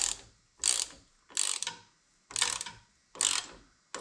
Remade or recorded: recorded